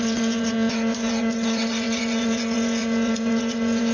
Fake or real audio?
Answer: fake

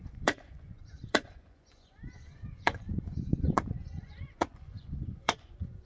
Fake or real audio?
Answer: fake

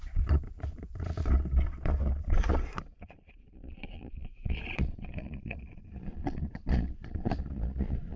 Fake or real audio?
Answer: fake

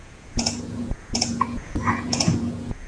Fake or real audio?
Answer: fake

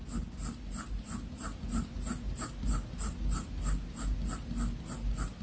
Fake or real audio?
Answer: real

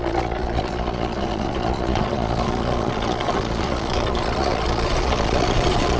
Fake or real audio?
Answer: fake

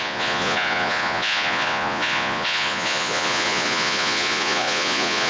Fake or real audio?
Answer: fake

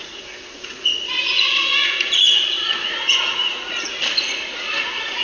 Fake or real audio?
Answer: fake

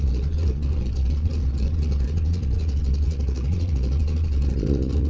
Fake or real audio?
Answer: fake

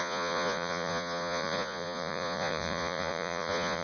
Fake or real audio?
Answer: fake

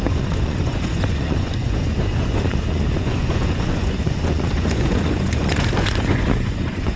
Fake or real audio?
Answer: fake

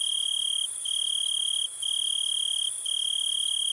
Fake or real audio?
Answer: real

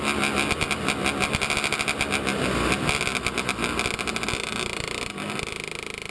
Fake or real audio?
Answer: real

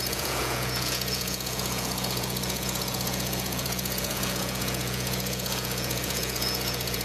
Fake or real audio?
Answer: fake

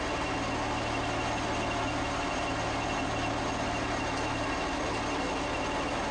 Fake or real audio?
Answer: real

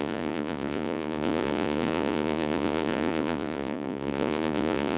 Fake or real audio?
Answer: fake